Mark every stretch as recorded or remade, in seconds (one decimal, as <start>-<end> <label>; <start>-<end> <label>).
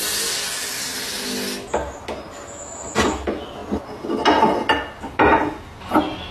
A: 0.0-6.3 recorded